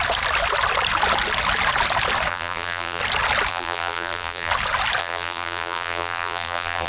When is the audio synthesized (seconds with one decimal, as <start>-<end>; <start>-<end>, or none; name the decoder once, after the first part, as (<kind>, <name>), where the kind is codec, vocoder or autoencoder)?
2.3-3.0 (vocoder, BigVGAN v2); 3.5-4.5; 5.0-6.9